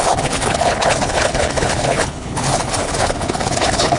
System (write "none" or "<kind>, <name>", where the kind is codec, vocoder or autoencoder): codec, HILCodec